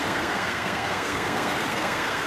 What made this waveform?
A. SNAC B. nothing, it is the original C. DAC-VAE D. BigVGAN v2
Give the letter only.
A